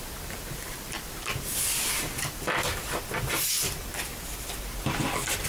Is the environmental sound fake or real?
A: fake